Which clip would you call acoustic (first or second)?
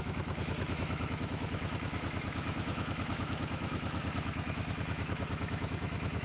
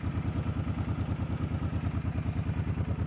second